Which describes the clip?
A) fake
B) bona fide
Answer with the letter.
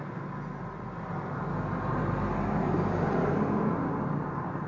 B